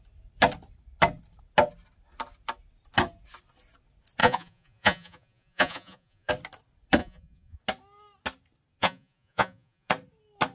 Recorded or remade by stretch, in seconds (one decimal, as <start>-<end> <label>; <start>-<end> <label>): 0.0-4.2 recorded; 4.2-6.3 remade; 6.3-7.0 recorded; 7.0-7.6 remade; 7.6-8.8 recorded; 8.8-9.9 remade; 9.9-10.5 recorded